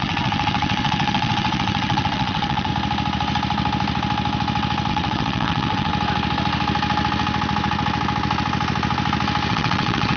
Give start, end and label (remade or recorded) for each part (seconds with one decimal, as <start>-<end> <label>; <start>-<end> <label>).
0.0-2.7 remade; 2.7-4.9 recorded; 4.9-5.9 remade; 5.9-9.5 recorded; 9.5-10.2 remade